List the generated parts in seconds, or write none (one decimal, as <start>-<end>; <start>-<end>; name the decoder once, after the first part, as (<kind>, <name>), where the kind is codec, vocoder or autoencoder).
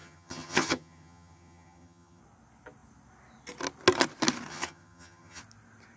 0.0-2.2 (vocoder, HiFi-GAN); 4.5-5.4